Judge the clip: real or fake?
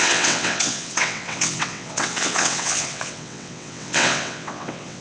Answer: fake